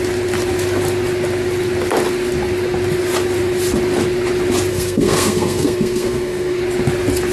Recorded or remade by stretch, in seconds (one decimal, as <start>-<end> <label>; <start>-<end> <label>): 0.0-4.7 recorded; 4.7-6.6 remade; 6.6-7.3 recorded